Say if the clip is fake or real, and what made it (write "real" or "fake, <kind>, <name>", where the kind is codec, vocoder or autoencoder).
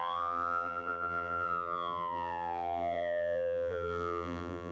fake, vocoder, BigVGAN v2